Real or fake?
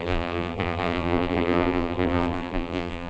fake